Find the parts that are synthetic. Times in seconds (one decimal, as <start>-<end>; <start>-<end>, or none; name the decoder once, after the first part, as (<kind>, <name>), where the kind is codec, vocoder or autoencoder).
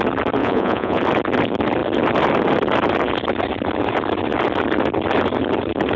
0.4-1.0 (vocoder, Vocos)